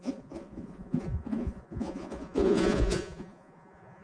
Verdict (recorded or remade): remade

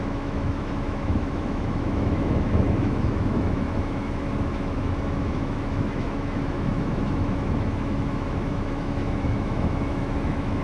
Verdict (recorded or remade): remade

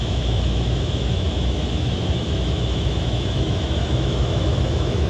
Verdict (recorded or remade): remade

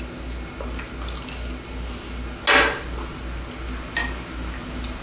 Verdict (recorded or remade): recorded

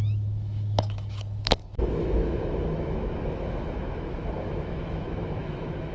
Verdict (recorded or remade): remade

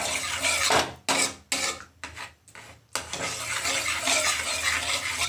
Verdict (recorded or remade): recorded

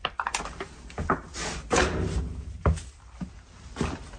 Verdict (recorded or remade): recorded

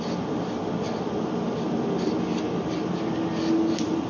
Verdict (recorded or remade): recorded